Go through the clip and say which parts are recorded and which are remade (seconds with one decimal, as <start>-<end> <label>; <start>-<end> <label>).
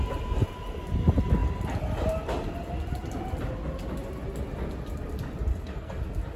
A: 0.0-5.5 recorded; 5.5-6.0 remade; 6.0-6.4 recorded